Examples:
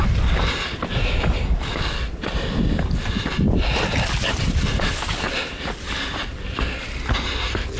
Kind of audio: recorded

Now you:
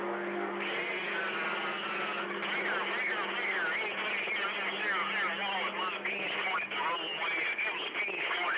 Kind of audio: recorded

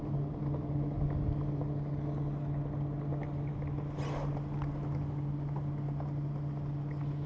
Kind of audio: recorded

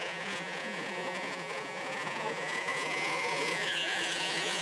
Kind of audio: remade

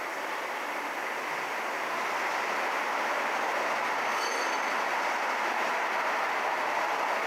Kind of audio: recorded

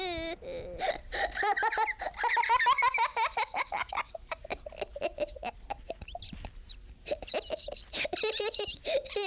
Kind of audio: recorded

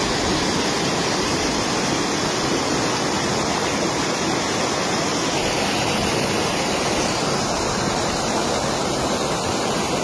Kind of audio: recorded